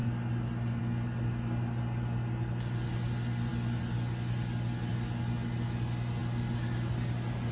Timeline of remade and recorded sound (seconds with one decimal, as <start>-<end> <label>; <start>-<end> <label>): 0.0-7.5 recorded